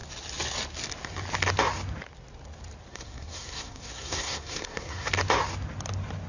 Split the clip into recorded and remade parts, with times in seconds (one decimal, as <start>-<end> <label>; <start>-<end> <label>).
0.0-2.9 recorded; 2.9-5.1 remade; 5.1-6.3 recorded